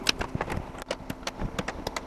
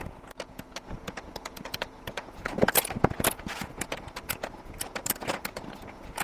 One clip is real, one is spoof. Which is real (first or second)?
first